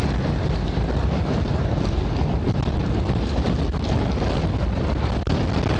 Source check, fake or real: real